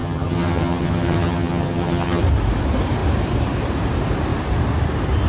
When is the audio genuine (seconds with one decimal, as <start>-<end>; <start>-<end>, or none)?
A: 2.2-5.3